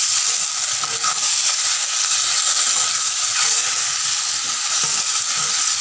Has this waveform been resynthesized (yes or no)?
no